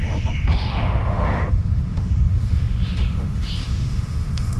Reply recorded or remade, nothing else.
remade